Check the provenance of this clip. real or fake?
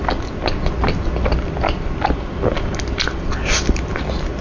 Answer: real